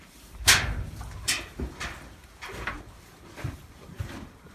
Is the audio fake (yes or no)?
yes